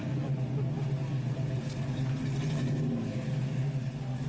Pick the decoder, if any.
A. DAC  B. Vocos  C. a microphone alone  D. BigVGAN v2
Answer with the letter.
C